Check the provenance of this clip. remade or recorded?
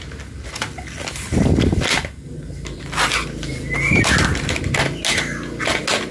recorded